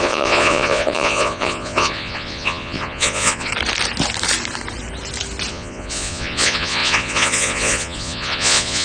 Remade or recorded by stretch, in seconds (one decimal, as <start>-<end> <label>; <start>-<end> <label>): 0.0-3.5 remade; 3.5-5.5 recorded; 5.5-8.8 remade